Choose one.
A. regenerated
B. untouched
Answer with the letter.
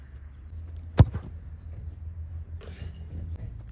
B